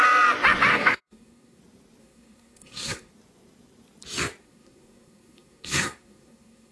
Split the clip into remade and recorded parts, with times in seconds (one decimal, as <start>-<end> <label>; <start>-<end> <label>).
0.0-0.7 recorded; 0.7-1.6 remade; 1.6-2.0 recorded; 2.0-3.1 remade; 3.1-4.4 recorded; 4.4-6.7 remade